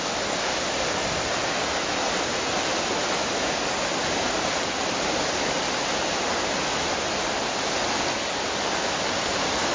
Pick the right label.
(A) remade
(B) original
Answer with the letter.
B